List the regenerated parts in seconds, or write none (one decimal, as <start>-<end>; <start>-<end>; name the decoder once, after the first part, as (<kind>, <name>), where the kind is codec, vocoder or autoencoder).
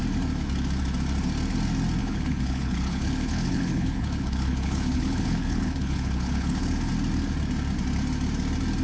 2.0-6.9 (codec, HILCodec)